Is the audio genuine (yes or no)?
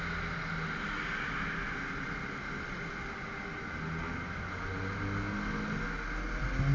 yes